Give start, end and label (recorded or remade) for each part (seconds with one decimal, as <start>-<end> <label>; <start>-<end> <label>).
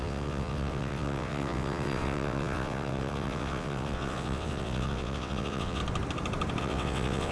0.0-5.8 remade; 5.8-6.6 recorded; 6.6-7.3 remade